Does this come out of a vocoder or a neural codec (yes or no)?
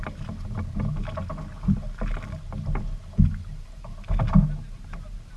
no